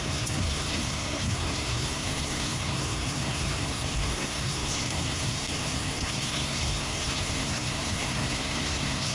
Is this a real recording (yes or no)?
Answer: no